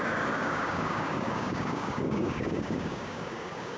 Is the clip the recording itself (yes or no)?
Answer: no